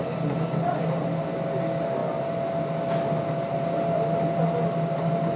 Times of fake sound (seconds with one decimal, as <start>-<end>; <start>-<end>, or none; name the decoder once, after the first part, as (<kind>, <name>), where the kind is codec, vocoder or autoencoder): none